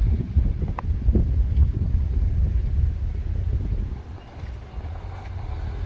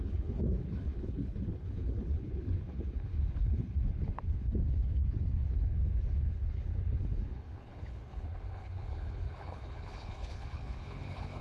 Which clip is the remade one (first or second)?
second